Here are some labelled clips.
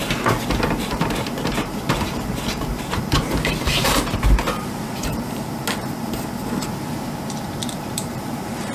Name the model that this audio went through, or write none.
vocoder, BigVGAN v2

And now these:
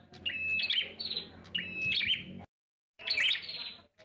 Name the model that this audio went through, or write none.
none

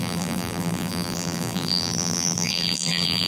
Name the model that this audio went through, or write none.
vocoder, BigVGAN v2